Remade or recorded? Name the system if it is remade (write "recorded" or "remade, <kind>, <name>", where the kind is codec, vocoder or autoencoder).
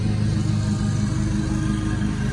recorded